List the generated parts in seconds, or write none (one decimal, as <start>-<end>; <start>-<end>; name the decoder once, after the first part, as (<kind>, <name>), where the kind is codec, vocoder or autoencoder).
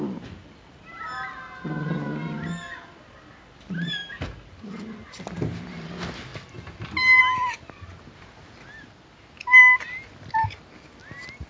none